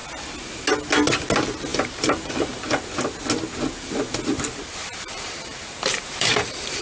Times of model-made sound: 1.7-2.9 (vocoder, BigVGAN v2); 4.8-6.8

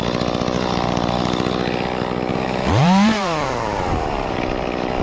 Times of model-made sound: 2.3-4.4 (vocoder, BigVGAN v2)

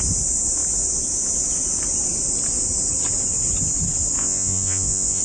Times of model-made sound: 4.2-5.2 (vocoder, Vocos)

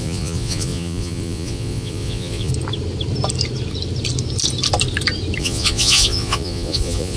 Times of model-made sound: 0.0-2.5 (vocoder, Vocos); 5.4-7.2